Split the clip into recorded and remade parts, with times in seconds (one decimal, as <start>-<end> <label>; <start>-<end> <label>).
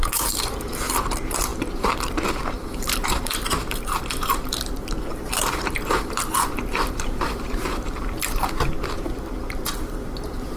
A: 0.0-10.6 remade